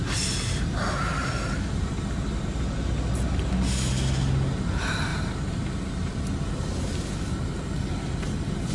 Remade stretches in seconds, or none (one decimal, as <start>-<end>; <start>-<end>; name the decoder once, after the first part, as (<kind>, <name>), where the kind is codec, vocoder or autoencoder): 1.2-1.9 (vocoder, BigVGAN v2); 5.1-5.7